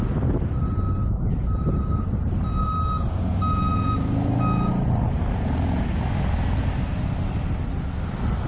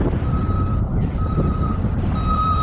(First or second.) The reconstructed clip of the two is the second